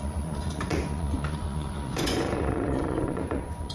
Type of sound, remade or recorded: remade